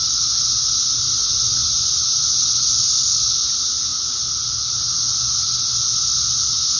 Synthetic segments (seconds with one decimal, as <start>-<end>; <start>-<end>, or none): 1.6-2.4

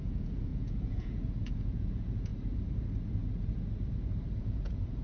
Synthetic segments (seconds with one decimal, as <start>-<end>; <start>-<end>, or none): 0.0-2.3; 4.4-5.0

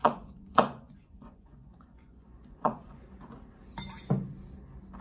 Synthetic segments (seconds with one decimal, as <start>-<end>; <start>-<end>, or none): 0.0-3.0